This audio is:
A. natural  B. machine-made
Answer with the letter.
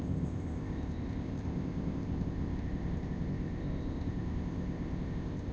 B